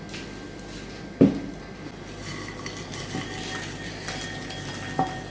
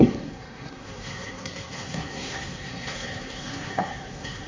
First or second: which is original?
first